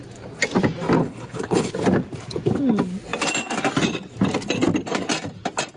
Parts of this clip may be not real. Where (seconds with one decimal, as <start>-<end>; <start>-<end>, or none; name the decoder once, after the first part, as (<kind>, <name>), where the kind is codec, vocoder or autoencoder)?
1.0-1.7 (codec, HILCodec)